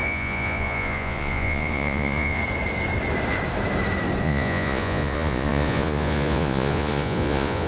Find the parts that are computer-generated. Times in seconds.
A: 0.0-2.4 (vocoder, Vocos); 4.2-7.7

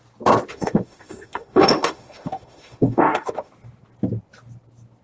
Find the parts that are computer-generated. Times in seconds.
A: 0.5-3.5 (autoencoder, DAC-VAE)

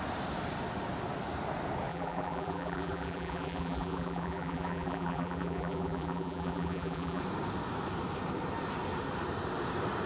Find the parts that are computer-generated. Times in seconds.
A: 1.9-7.2 (vocoder, BigVGAN v2)